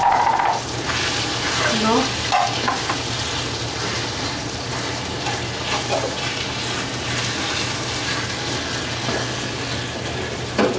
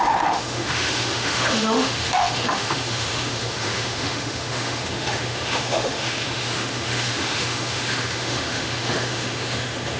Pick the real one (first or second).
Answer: first